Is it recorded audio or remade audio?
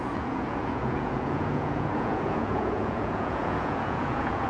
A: remade